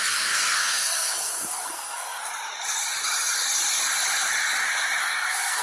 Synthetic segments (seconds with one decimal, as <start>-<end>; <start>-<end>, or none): 0.0-2.2; 5.0-5.6